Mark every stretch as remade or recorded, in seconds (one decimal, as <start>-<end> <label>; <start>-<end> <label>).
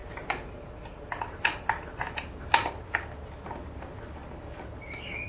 0.0-5.3 recorded